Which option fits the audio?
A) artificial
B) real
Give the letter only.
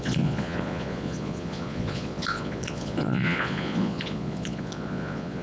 A